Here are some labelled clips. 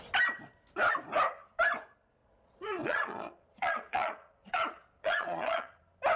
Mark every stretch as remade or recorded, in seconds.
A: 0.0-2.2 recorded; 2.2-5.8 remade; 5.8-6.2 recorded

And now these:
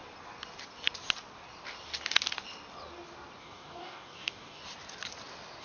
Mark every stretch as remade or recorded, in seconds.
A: 0.0-3.4 recorded; 3.4-4.6 remade; 4.6-5.6 recorded

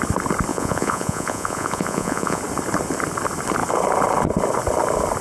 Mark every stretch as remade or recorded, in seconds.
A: 0.0-0.5 recorded; 0.5-2.4 remade; 2.4-5.2 recorded

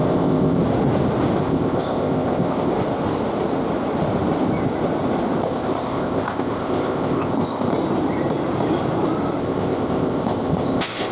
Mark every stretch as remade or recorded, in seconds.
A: 0.0-0.6 remade; 0.6-1.4 recorded; 1.4-2.7 remade; 2.7-5.4 recorded; 5.4-7.7 remade; 7.7-9.4 recorded; 9.4-11.1 remade

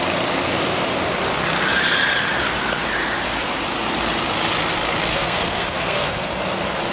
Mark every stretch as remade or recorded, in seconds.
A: 0.0-5.1 recorded; 5.1-6.3 remade; 6.3-6.9 recorded

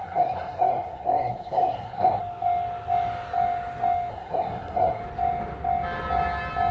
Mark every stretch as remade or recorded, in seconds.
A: 0.0-2.2 remade; 2.2-4.1 recorded; 4.1-5.0 remade; 5.0-6.7 recorded

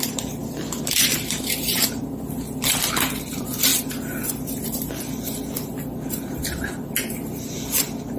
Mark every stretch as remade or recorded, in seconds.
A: 0.0-3.7 remade; 3.7-4.6 recorded; 4.6-8.2 remade